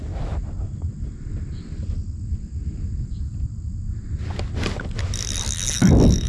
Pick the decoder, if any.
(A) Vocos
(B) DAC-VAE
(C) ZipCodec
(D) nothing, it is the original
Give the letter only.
D